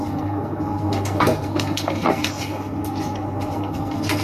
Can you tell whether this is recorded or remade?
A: remade